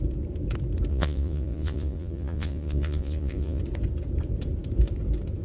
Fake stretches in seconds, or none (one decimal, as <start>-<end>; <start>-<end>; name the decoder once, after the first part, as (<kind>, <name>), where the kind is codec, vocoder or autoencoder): 0.9-3.6 (vocoder, Vocos)